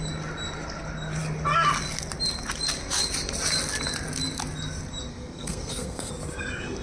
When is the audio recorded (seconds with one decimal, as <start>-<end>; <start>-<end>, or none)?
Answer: 0.0-5.1; 6.1-6.8